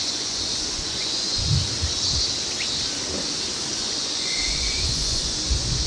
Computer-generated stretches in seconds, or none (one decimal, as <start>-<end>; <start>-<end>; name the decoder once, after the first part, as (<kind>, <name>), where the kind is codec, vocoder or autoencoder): 0.0-1.5 (vocoder, Vocos); 3.7-5.9